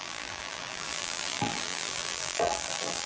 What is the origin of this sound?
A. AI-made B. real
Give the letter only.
A